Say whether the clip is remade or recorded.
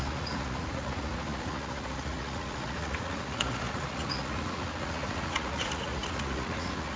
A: remade